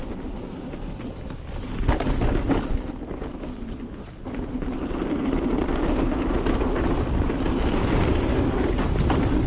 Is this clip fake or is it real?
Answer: real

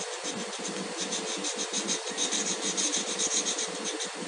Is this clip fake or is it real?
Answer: real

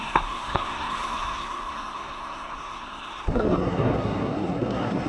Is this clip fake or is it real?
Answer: fake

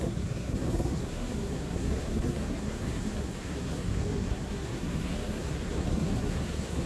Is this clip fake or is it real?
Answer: fake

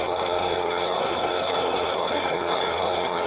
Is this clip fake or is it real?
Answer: fake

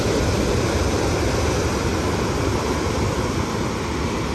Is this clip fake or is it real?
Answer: real